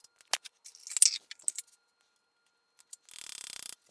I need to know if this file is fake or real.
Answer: real